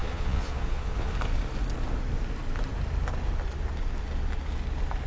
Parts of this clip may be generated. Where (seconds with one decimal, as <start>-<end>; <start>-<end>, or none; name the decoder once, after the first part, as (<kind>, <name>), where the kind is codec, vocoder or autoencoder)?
0.0-1.1 (vocoder, Vocos)